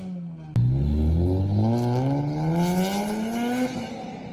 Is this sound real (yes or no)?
yes